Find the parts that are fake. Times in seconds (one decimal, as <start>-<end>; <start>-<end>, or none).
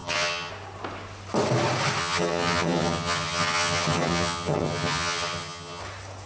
0.0-0.5; 2.0-5.8